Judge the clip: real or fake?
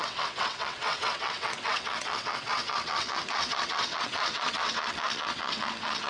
fake